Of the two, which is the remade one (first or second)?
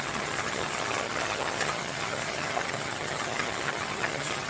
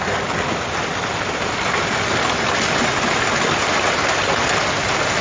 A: first